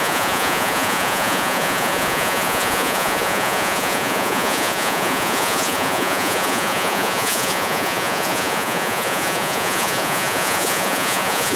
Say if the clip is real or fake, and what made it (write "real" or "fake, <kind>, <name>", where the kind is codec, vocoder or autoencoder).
fake, vocoder, Vocos